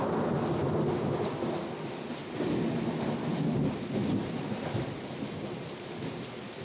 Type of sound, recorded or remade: recorded